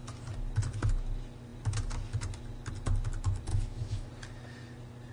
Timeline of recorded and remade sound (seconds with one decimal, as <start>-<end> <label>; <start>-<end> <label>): 0.0-3.5 recorded; 3.5-4.1 remade; 4.1-5.1 recorded